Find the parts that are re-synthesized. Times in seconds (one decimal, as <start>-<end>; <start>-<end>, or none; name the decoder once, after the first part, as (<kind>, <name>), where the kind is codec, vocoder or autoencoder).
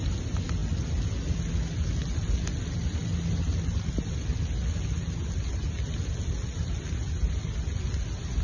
none